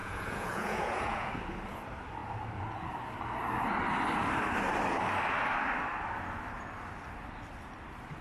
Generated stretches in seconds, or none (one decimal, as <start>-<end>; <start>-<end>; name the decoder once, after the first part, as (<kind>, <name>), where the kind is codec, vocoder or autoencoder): 0.0-1.3 (vocoder, Vocos)